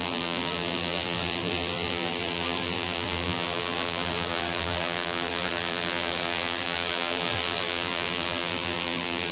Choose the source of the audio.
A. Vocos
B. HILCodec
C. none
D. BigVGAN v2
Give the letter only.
D